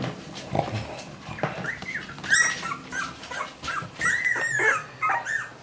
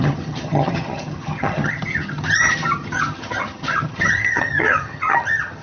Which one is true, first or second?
first